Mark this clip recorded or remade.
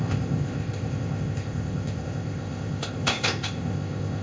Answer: remade